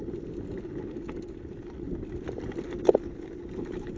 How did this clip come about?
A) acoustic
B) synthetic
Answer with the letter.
A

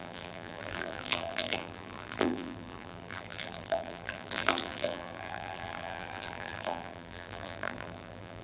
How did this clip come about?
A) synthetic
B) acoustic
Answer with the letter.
A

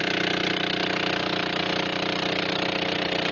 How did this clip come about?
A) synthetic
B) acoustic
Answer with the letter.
B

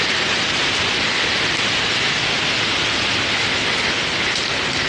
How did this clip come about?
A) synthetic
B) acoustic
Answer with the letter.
B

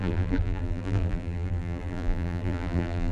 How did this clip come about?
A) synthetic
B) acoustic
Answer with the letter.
A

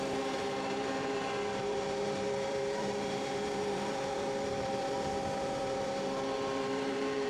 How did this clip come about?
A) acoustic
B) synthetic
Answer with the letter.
B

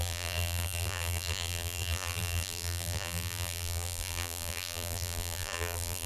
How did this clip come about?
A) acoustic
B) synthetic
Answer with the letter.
B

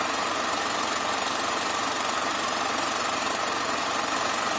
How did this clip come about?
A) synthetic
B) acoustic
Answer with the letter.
A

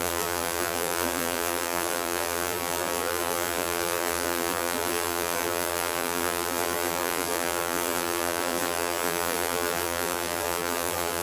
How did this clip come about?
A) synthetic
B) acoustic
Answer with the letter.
A